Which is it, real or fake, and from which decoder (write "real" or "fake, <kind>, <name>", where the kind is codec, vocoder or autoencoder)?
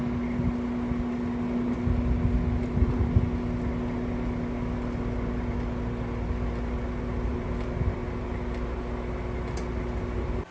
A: real